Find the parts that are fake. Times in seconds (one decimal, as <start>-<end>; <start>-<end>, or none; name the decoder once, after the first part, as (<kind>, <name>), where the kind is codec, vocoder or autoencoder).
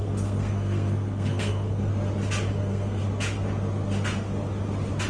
0.0-1.9 (codec, SNAC); 2.5-3.0